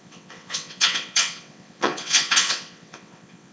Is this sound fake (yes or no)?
yes